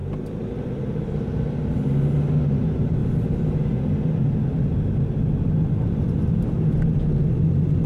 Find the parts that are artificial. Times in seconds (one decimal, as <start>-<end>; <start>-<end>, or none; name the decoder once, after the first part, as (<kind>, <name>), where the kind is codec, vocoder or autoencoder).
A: none